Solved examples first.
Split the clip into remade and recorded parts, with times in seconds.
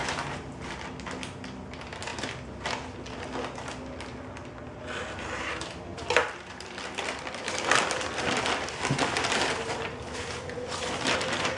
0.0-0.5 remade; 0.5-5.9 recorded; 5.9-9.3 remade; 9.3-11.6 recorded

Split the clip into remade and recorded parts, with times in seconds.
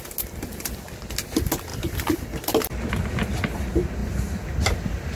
0.0-1.7 recorded; 1.7-2.2 remade; 2.2-4.0 recorded; 4.0-5.1 remade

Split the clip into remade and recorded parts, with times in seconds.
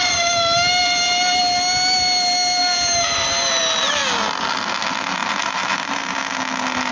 0.0-0.8 recorded; 0.8-1.4 remade; 1.4-2.6 recorded; 2.6-3.6 remade; 3.6-5.2 recorded; 5.2-6.2 remade; 6.2-6.9 recorded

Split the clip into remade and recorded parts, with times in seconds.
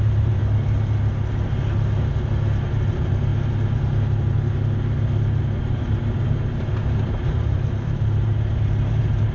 0.0-0.4 remade; 0.4-2.9 recorded; 2.9-3.3 remade; 3.3-5.6 recorded; 5.6-9.3 remade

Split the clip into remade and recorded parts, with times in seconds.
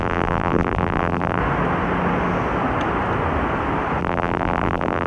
0.0-1.4 remade; 1.4-4.0 recorded; 4.0-5.1 remade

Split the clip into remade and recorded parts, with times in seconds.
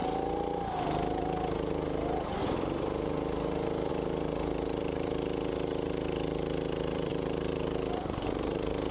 0.0-8.9 remade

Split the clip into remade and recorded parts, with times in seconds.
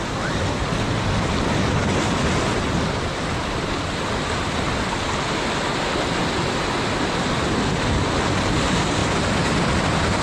0.0-6.2 remade; 6.2-7.8 recorded; 7.8-10.2 remade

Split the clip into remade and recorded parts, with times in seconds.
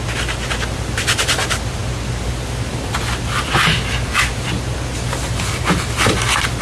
0.0-6.6 recorded